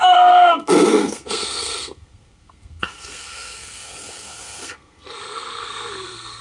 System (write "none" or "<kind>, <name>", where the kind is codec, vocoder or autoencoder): codec, SNAC